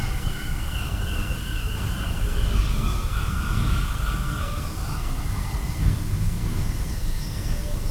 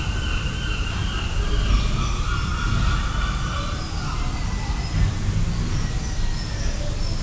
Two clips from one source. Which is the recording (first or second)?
second